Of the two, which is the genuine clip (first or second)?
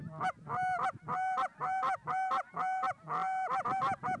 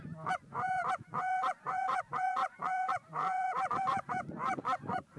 first